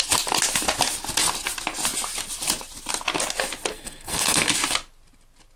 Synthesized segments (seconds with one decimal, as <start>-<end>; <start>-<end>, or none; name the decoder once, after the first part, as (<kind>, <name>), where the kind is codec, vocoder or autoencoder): 3.7-4.5 (codec, SNAC)